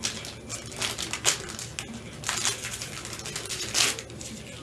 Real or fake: real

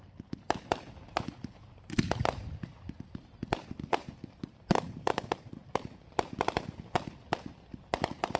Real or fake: real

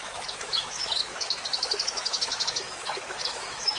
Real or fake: fake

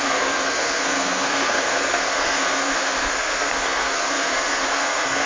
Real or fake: fake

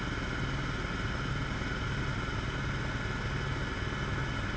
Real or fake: real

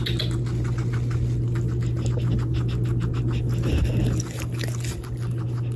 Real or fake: real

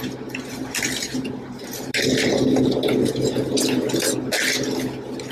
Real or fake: real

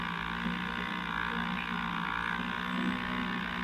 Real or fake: real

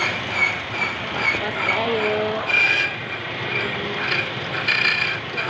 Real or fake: real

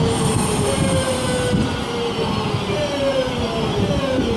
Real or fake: real